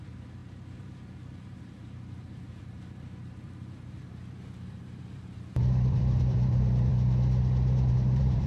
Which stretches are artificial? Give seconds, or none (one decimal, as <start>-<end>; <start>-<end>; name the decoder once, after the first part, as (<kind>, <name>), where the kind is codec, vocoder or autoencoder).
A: 0.0-6.9 (vocoder, BigVGAN v2); 7.9-8.5